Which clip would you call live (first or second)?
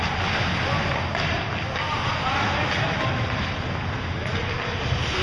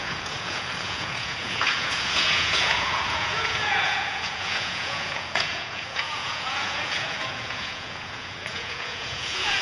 first